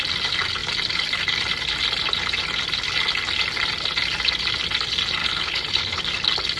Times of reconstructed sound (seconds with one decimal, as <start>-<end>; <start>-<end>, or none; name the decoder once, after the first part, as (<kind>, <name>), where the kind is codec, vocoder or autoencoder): 5.2-6.0 (codec, HILCodec)